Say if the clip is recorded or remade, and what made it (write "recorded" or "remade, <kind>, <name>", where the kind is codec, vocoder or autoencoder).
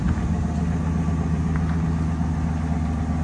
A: recorded